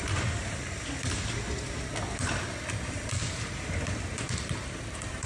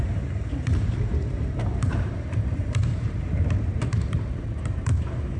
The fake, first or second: second